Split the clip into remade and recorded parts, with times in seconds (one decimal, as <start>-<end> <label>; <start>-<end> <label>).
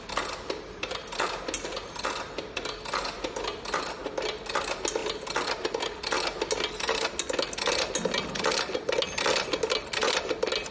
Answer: 0.0-10.7 recorded